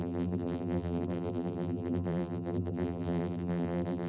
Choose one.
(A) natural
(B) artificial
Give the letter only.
B